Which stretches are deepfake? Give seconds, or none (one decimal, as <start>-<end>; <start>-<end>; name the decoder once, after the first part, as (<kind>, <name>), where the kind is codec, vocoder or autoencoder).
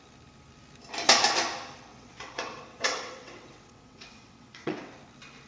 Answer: 1.9-4.9 (vocoder, WaveNeXt)